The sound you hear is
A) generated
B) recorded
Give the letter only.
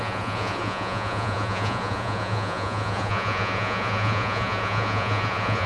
A